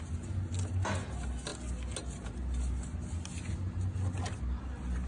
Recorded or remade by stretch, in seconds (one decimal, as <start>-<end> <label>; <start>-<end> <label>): 0.0-5.1 recorded